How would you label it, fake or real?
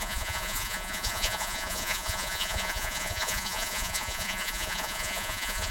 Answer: fake